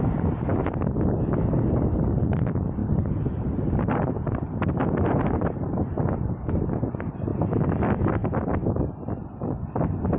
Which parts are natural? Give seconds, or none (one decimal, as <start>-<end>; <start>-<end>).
0.0-2.8; 6.7-10.2